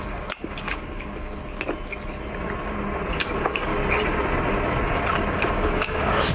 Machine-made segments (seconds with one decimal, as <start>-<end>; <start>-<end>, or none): 0.0-1.4; 3.1-3.7; 5.3-6.3